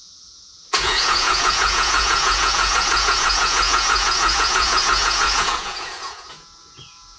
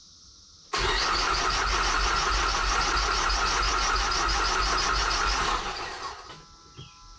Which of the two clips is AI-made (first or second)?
first